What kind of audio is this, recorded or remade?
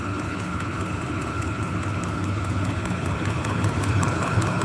remade